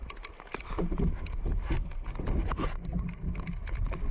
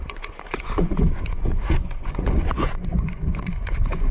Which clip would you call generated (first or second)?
second